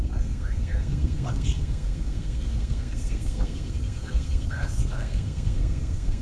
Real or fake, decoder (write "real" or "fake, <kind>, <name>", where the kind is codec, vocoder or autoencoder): fake, codec, SNAC